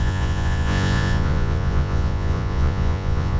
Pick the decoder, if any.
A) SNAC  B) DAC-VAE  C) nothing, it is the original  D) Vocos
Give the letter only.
D